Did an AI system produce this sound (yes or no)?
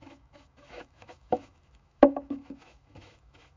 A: yes